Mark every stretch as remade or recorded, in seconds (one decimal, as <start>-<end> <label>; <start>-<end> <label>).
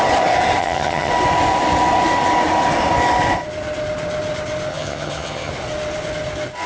0.0-0.6 recorded; 0.6-1.1 remade; 1.1-4.7 recorded; 4.7-5.5 remade; 5.5-6.7 recorded